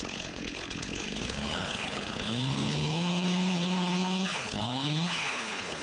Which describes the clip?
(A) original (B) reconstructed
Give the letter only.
B